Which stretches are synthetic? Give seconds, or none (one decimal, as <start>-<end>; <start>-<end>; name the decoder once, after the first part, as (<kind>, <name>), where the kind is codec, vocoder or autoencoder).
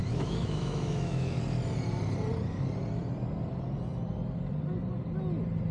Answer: 0.0-1.4 (autoencoder, DAC-VAE)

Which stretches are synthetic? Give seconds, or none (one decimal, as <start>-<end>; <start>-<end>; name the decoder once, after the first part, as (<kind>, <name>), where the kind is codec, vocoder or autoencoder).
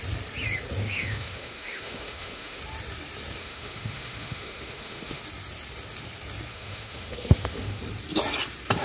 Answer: 0.8-2.6 (autoencoder, DAC-VAE); 3.4-5.2; 6.5-7.8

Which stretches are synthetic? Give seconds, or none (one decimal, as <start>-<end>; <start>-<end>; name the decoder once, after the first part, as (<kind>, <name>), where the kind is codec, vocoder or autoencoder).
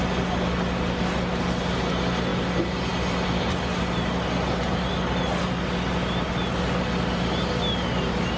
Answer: none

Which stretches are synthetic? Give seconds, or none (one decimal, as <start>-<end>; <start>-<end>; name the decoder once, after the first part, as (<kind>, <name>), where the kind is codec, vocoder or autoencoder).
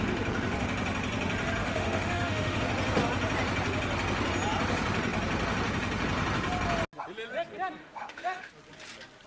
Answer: 1.6-2.6 (autoencoder, DAC-VAE); 7.8-8.5